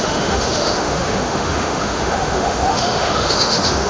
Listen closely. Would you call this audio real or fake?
fake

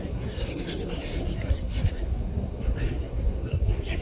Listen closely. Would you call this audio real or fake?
fake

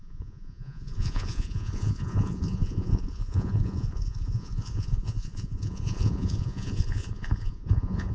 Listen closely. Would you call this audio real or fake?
fake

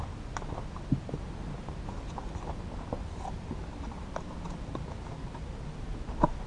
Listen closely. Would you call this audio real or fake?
real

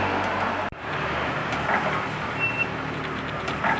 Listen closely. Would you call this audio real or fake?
real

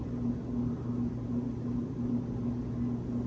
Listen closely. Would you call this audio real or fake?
real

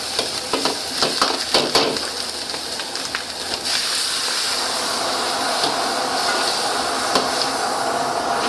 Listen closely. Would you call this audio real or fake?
real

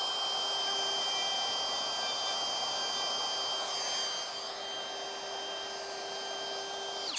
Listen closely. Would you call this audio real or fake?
real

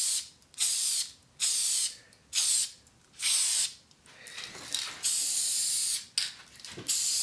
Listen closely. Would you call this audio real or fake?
real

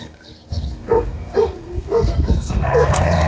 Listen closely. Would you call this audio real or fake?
fake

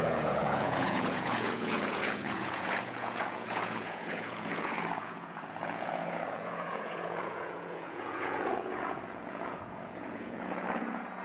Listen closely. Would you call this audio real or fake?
fake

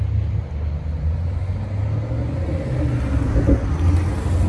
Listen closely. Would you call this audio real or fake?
real